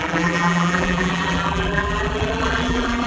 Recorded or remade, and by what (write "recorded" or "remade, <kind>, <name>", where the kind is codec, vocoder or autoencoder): remade, vocoder, BigVGAN v2